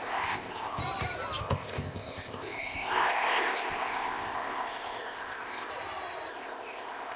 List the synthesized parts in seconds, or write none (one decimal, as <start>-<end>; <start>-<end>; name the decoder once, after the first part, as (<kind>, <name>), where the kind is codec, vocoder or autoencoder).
0.0-0.8 (codec, ZipCodec); 1.4-5.7; 6.3-7.2